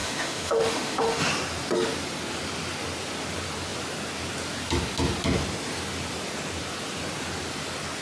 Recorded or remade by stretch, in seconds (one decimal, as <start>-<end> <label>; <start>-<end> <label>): 0.0-1.3 remade; 1.3-8.0 recorded